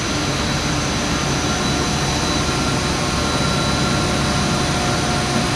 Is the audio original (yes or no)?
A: yes